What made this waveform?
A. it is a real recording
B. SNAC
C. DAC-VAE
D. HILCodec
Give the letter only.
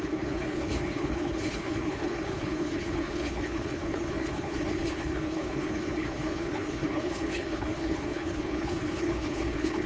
D